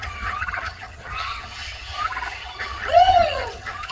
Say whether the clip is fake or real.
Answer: fake